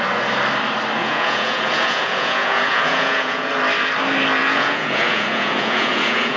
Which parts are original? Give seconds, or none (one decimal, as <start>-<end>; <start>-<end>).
0.0-1.0; 3.5-4.4